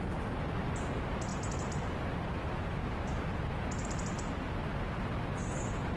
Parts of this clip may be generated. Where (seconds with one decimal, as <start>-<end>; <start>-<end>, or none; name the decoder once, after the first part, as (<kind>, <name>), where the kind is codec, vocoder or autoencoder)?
none